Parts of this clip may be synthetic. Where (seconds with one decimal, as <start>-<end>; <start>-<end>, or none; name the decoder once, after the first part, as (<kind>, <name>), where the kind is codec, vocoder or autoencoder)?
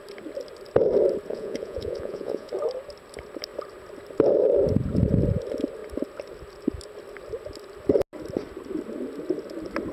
1.3-2.5 (vocoder, Vocos)